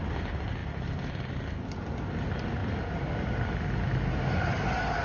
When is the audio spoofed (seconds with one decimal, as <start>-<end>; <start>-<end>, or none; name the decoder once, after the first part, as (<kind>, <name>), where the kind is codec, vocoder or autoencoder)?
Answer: 0.6-1.3 (vocoder, BigVGAN v2); 2.6-3.3